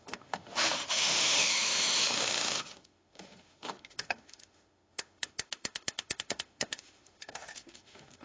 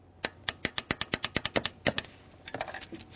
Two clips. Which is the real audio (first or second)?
second